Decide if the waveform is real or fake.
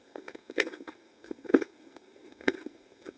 fake